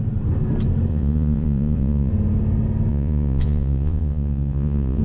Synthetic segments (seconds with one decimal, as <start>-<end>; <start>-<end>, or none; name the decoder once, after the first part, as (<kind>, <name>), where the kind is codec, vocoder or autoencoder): 0.9-2.1 (vocoder, Vocos); 2.9-5.0